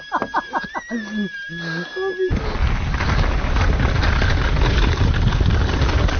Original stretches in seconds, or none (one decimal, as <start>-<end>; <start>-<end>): 0.0-6.2